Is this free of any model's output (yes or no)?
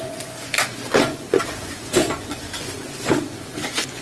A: no